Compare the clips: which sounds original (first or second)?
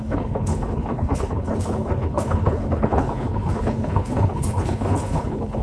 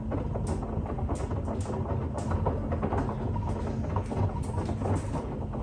second